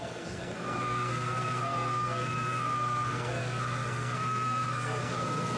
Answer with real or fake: fake